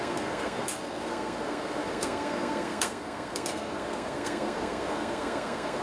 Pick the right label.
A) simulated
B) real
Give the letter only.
A